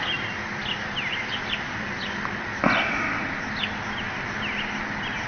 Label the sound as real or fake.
real